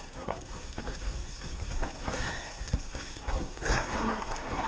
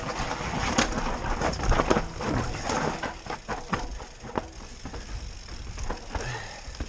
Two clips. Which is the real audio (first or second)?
second